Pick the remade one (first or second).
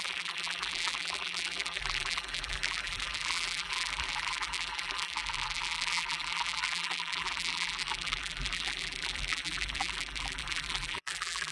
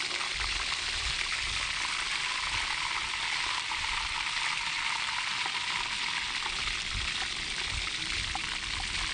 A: first